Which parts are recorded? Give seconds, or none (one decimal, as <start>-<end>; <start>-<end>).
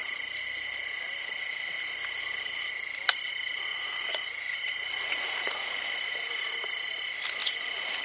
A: 0.0-3.7; 6.3-7.4